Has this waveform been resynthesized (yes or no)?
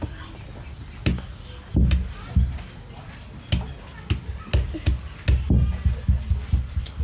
no